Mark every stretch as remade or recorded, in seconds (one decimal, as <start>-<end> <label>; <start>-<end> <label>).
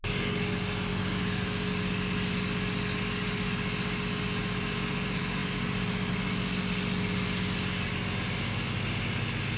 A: 0.0-0.9 recorded; 0.9-1.7 remade; 1.7-9.6 recorded